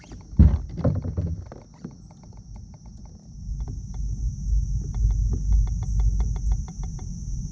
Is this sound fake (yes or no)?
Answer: no